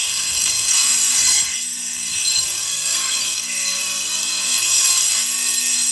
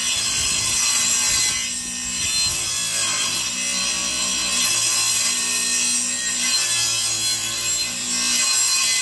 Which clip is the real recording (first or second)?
second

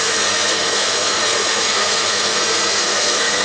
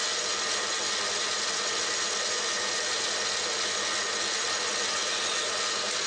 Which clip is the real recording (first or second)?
second